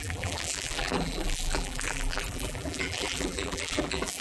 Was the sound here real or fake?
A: fake